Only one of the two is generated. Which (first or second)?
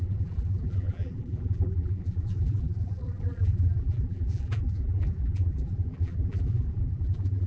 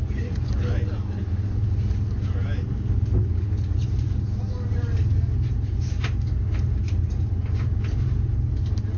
first